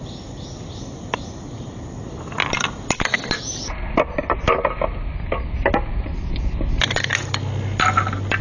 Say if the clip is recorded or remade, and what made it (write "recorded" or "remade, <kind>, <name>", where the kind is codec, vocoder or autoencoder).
recorded